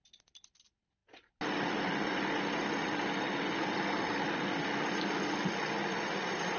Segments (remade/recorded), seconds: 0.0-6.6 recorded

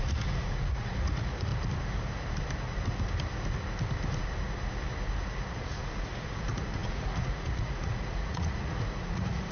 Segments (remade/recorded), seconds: 0.0-1.5 remade; 1.5-5.5 recorded; 5.5-9.5 remade

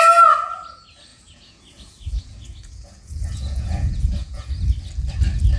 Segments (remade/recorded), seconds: 0.0-1.1 recorded; 1.1-4.5 remade; 4.5-5.6 recorded

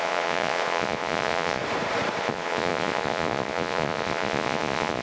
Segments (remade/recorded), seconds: 0.0-1.6 remade; 1.6-2.2 recorded; 2.2-5.0 remade

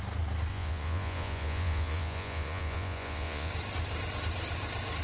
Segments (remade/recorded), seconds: 0.0-0.5 recorded; 0.5-3.5 remade; 3.5-5.0 recorded

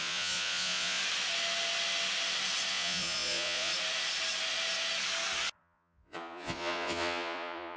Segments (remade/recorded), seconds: 0.0-1.0 remade; 1.0-2.7 recorded; 2.7-3.7 remade; 3.7-5.6 recorded; 5.6-7.8 remade

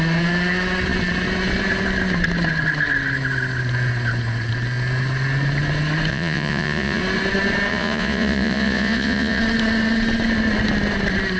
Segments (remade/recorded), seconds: 0.0-6.1 recorded; 6.1-7.0 remade; 7.0-7.7 recorded; 7.7-9.4 remade; 9.4-11.4 recorded

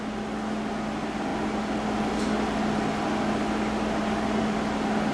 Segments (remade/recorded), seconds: 0.0-5.1 recorded